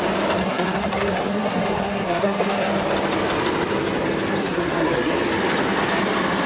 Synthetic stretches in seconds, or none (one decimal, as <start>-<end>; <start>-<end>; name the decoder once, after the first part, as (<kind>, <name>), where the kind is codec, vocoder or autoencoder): 0.4-2.7 (codec, SNAC); 4.4-5.1